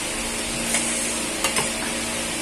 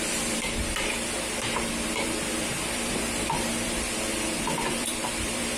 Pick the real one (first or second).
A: first